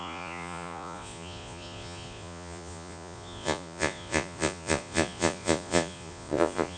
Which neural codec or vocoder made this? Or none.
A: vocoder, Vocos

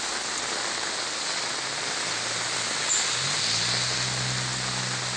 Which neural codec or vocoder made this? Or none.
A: none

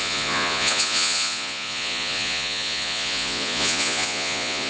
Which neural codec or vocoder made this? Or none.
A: vocoder, Vocos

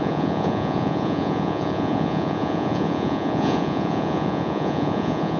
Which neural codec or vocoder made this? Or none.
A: vocoder, Vocos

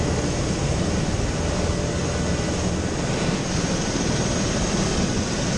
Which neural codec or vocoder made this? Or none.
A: none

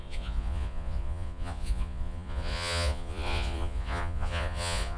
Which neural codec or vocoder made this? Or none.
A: vocoder, Vocos